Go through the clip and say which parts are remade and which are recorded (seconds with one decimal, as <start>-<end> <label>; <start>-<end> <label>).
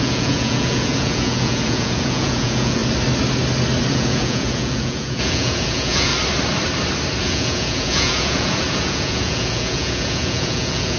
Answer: 0.0-2.8 remade; 2.8-3.9 recorded; 3.9-6.1 remade; 6.1-7.2 recorded; 7.2-11.0 remade